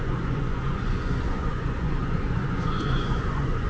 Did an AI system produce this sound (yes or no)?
yes